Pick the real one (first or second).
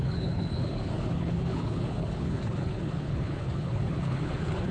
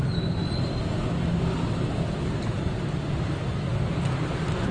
second